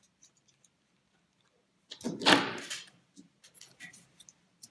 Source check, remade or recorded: recorded